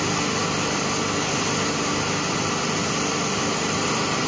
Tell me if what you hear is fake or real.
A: real